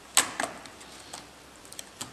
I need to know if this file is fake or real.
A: real